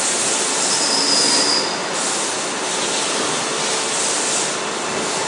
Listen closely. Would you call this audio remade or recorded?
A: recorded